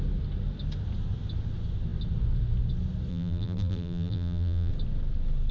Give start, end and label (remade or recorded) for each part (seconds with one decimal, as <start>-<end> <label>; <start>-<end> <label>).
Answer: 0.0-3.1 recorded; 3.1-4.7 remade; 4.7-5.5 recorded